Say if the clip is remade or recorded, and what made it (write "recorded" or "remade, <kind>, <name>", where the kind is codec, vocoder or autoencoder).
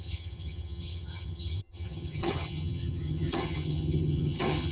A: remade, vocoder, HiFi-GAN